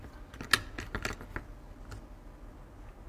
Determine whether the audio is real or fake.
real